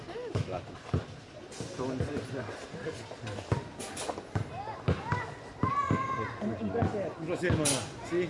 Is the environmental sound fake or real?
real